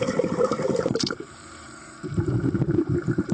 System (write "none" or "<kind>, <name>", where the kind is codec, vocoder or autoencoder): vocoder, BigVGAN v2